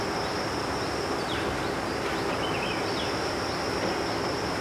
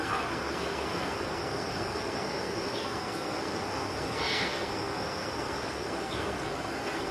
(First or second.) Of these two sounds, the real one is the first